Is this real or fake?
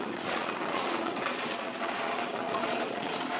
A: fake